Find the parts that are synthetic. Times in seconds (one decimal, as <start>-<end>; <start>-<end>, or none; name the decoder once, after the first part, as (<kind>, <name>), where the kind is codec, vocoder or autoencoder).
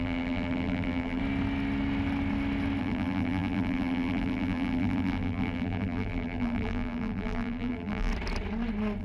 0.0-1.2 (vocoder, BigVGAN v2); 2.8-8.1